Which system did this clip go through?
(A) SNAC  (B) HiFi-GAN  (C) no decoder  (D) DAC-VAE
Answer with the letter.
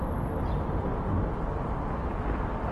C